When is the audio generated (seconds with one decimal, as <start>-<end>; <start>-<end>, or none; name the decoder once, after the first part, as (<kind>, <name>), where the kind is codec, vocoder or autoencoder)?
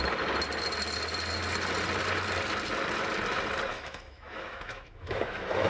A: 3.7-5.7 (autoencoder, DAC-VAE)